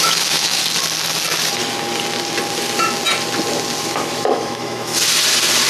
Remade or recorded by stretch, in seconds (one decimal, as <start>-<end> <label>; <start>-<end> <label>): 0.0-0.6 remade; 0.6-3.8 recorded; 3.8-4.9 remade; 4.9-5.7 recorded